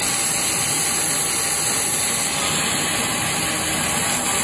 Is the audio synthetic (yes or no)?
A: no